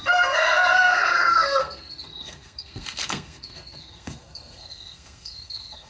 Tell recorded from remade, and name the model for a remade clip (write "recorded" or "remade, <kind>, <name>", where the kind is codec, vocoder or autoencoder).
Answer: remade, codec, SNAC